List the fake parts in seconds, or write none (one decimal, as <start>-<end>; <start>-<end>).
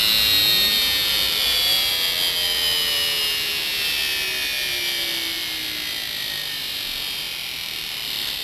1.1-1.9